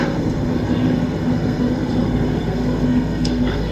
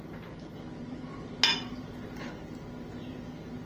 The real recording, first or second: second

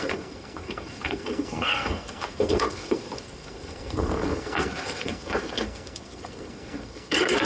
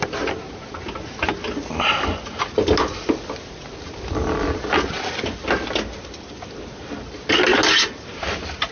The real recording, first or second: second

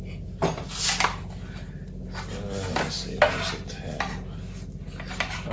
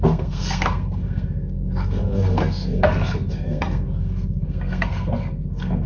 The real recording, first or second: first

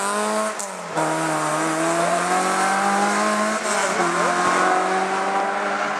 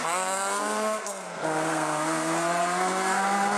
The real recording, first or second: first